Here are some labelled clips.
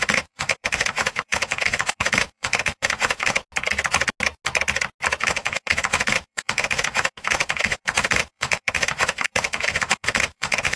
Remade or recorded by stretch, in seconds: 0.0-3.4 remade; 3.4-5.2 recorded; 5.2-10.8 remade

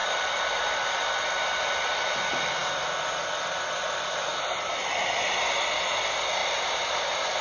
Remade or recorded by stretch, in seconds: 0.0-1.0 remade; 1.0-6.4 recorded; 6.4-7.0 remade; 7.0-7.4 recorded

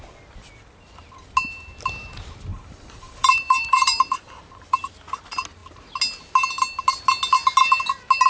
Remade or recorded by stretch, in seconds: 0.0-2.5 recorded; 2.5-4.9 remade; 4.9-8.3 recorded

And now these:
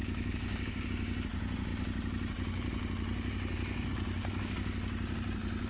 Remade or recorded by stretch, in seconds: 0.0-0.9 remade; 0.9-5.7 recorded

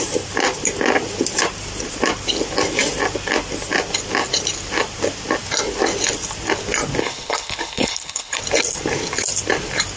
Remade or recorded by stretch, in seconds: 0.0-7.0 recorded; 7.0-8.4 remade; 8.4-10.0 recorded